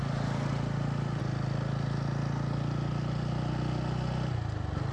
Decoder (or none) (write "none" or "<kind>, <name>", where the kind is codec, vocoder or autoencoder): none